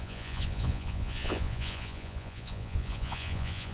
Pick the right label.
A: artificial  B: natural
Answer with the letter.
A